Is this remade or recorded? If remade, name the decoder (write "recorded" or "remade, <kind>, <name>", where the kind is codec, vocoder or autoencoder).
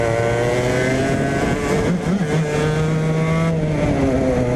recorded